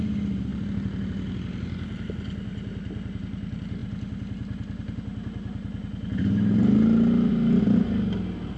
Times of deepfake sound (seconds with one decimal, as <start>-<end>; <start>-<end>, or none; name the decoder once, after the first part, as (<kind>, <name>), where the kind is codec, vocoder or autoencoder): none